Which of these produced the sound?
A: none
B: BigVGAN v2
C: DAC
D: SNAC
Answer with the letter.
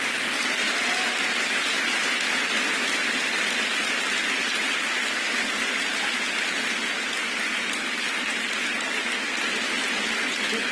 A